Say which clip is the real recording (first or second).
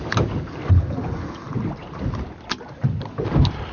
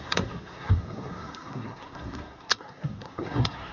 first